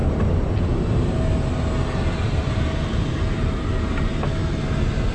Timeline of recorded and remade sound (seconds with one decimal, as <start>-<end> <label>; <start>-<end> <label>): 0.0-5.1 recorded